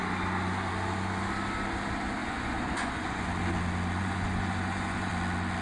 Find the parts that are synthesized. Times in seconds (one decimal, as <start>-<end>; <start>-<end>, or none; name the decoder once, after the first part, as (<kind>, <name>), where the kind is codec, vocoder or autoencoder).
2.2-3.3 (vocoder, Vocos); 4.0-5.1

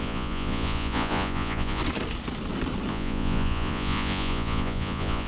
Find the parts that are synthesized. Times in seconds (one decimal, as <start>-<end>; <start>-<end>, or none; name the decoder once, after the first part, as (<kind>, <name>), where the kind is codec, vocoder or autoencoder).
0.0-1.8 (vocoder, Vocos); 2.9-5.3